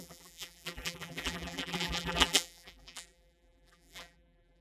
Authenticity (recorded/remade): remade